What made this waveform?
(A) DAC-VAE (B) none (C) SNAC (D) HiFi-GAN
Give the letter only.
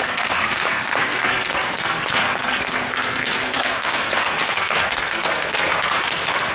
C